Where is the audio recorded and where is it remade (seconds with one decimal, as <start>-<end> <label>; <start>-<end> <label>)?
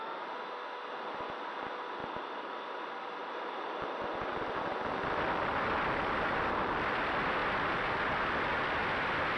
0.0-2.0 recorded; 2.0-6.5 remade; 6.5-7.4 recorded; 7.4-8.2 remade; 8.2-9.4 recorded